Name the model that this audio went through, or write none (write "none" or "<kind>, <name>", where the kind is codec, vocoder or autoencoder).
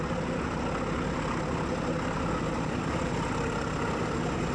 none